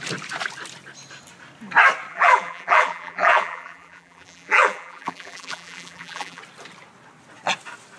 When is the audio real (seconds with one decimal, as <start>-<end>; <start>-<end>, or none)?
0.0-2.1; 6.4-8.0